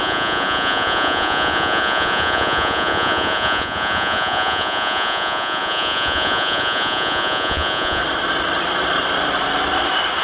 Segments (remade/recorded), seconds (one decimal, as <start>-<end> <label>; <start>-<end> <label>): 0.0-8.0 remade; 8.0-10.2 recorded